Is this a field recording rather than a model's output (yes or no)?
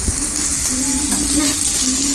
yes